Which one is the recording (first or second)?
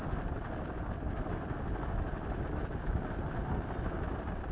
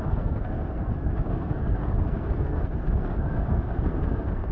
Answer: first